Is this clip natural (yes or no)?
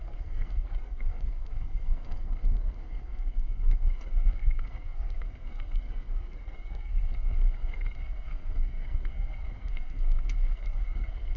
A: no